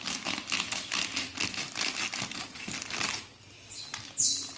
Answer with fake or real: real